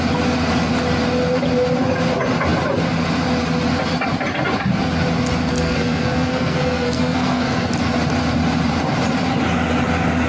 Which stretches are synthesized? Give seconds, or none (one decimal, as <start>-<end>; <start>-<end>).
5.5-7.7